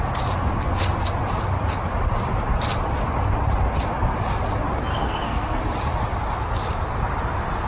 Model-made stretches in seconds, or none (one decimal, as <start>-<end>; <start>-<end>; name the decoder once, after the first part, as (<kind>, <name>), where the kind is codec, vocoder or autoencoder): 4.9-5.6 (codec, SNAC)